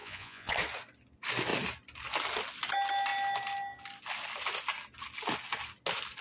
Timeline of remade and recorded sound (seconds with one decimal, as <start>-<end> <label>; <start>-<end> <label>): 0.0-0.5 remade; 0.5-6.2 recorded